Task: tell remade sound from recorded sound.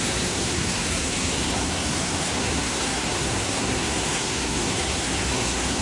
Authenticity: remade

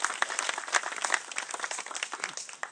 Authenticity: recorded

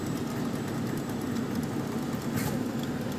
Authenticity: recorded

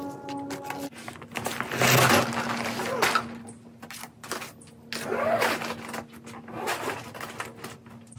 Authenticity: recorded